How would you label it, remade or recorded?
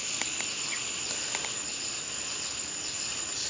recorded